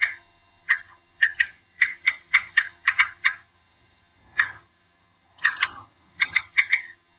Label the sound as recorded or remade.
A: remade